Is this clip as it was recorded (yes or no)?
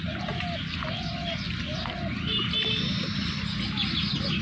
yes